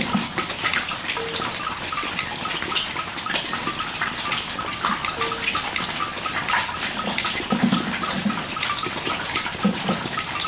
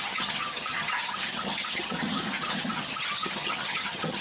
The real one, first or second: first